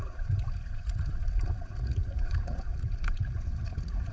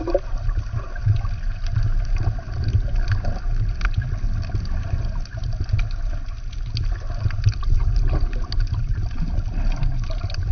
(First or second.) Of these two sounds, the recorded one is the second